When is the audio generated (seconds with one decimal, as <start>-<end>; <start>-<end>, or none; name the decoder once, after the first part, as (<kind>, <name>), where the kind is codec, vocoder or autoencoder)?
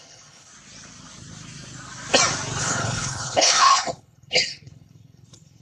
0.0-0.5 (codec, HILCodec); 2.6-5.6